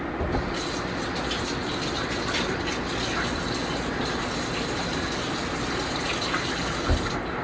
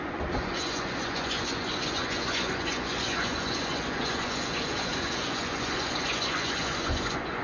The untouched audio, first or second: first